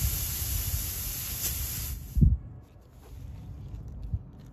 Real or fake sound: real